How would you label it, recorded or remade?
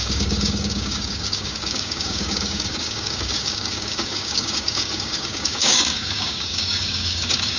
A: remade